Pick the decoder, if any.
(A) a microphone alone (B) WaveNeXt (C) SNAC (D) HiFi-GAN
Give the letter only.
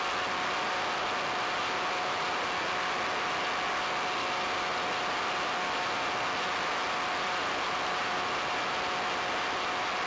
A